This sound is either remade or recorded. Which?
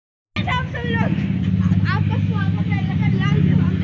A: recorded